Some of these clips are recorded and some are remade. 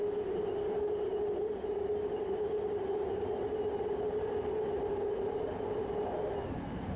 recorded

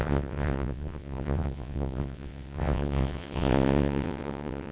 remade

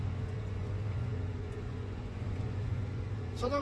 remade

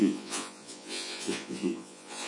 remade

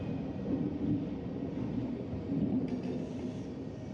recorded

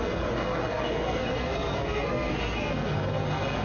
remade